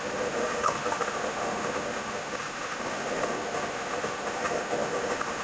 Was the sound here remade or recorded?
remade